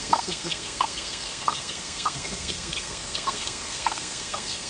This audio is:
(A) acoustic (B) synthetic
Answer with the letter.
B